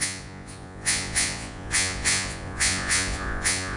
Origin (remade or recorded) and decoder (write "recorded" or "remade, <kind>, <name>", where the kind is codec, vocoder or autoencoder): remade, vocoder, Vocos